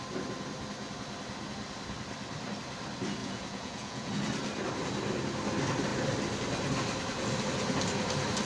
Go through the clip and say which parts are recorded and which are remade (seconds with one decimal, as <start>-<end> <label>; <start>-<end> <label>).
0.0-3.2 recorded; 3.2-4.1 remade; 4.1-8.5 recorded